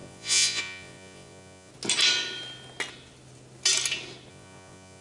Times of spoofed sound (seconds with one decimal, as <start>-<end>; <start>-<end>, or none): 0.0-1.7; 4.3-5.0